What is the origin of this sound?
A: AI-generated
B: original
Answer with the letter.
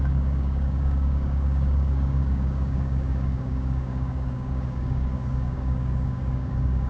A